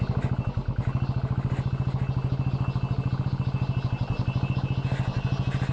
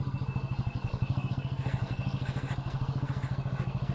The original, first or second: first